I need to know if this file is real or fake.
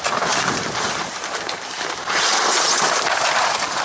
real